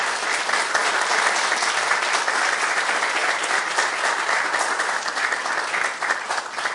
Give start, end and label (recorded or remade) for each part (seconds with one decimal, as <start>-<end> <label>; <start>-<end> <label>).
0.0-6.7 recorded